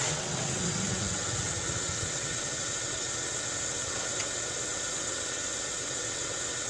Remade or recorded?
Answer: remade